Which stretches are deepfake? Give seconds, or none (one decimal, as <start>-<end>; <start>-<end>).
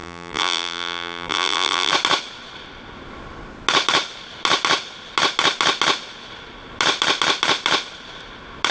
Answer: 0.0-1.9